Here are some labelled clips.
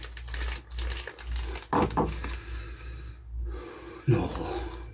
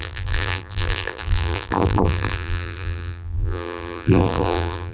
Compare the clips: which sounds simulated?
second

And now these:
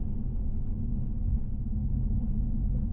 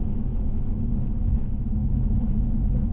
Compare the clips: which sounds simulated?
second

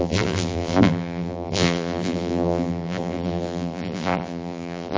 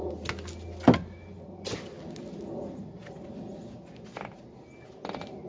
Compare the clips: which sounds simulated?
first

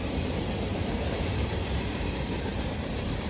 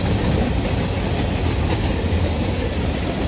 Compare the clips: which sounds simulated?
first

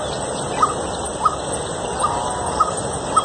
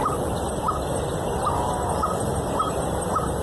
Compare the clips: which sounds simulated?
first